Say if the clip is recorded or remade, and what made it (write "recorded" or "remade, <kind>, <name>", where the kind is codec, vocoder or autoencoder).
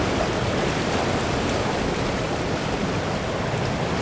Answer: recorded